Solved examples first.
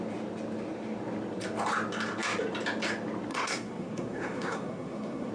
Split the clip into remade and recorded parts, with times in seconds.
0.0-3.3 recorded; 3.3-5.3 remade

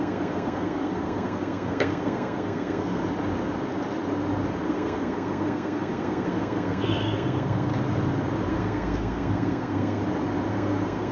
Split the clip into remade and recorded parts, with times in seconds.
0.0-3.0 remade; 3.0-4.7 recorded; 4.7-7.7 remade; 7.7-8.5 recorded; 8.5-10.0 remade; 10.0-10.5 recorded; 10.5-11.1 remade

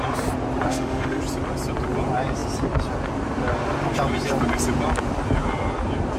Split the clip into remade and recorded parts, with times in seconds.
0.0-0.7 recorded; 0.7-1.2 remade; 1.2-6.2 recorded

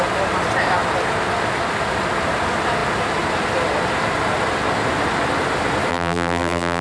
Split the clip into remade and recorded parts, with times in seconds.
0.0-5.9 recorded; 5.9-6.8 remade

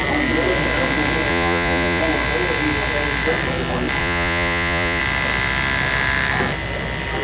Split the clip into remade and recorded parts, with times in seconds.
0.0-1.3 recorded; 1.3-2.0 remade; 2.0-4.0 recorded; 4.0-5.0 remade; 5.0-7.2 recorded

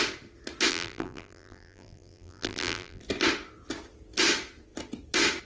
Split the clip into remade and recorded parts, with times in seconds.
0.0-0.7 recorded; 0.7-3.0 remade; 3.0-5.4 recorded

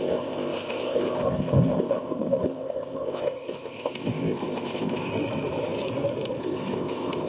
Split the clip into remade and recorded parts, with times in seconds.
0.0-5.1 remade; 5.1-6.4 recorded; 6.4-7.3 remade